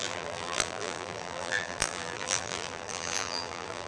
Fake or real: fake